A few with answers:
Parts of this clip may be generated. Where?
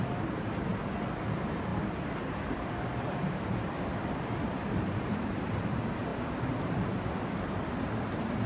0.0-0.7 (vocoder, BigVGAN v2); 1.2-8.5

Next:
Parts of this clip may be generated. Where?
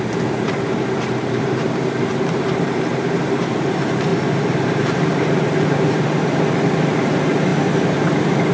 0.0-7.5 (vocoder, BigVGAN v2)